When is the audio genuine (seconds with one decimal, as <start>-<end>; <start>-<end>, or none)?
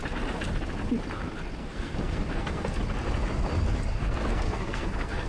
0.0-1.6; 2.8-3.9